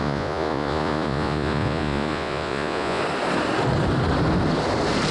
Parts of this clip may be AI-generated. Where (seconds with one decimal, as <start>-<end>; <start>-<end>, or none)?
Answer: 0.0-3.0

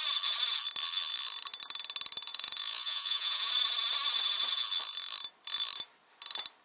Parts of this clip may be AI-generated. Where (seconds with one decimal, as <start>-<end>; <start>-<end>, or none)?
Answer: 2.3-3.5

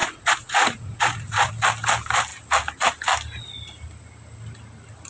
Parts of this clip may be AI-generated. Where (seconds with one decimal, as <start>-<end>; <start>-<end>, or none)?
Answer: 0.0-1.5

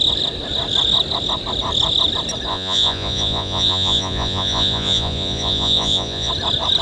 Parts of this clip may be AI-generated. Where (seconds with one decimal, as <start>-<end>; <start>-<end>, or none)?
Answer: 2.5-6.3

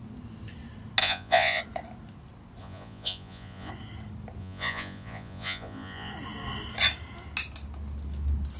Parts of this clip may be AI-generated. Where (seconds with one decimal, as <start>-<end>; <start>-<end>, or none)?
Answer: 1.0-1.6; 2.6-3.7; 4.4-6.1

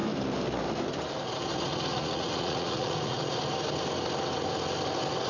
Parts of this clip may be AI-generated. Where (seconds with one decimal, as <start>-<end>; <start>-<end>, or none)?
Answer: 1.9-3.2

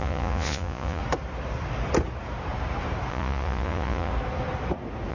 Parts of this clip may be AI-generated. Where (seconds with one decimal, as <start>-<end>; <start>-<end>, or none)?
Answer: 0.0-1.0; 3.1-4.1

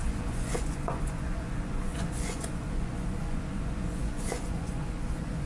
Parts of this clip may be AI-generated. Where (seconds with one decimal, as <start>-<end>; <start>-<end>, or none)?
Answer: 0.0-5.5